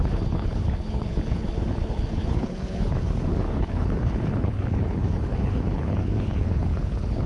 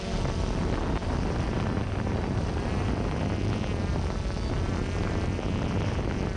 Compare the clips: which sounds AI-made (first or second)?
first